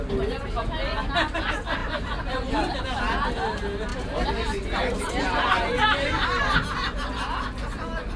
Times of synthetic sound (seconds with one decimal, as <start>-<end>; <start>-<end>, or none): 1.8-3.0; 3.9-5.2